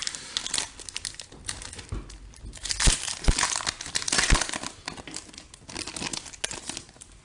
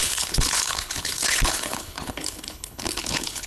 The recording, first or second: first